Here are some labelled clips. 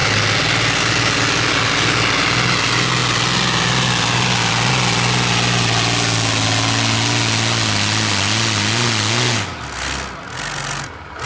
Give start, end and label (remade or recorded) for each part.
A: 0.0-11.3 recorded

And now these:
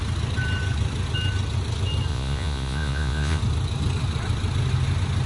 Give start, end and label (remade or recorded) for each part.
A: 0.0-2.1 recorded; 2.1-3.4 remade; 3.4-5.3 recorded

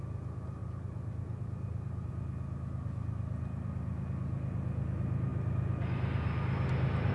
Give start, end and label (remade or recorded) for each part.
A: 0.0-0.6 recorded; 0.6-2.1 remade; 2.1-7.1 recorded

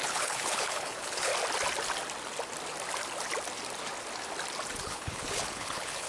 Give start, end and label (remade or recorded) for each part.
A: 0.0-1.3 remade; 1.3-4.8 recorded; 4.8-6.1 remade